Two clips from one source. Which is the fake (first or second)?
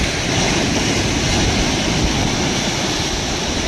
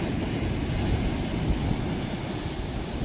first